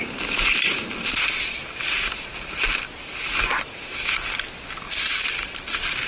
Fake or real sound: real